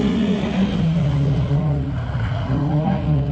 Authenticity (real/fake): fake